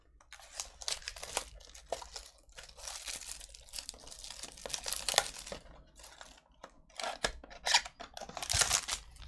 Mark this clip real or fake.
real